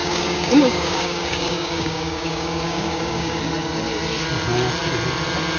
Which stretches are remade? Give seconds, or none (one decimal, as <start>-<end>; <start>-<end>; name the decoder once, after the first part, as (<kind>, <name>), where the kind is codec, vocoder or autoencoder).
0.0-3.4 (codec, DAC)